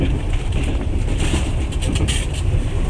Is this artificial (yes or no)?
yes